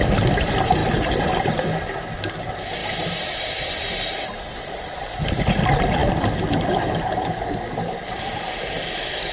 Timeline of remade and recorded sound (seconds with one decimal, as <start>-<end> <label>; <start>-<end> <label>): 0.0-9.3 recorded